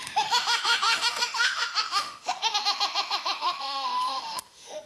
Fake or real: fake